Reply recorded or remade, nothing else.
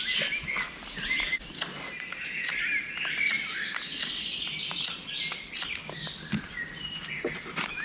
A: recorded